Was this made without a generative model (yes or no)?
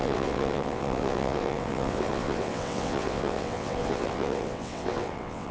no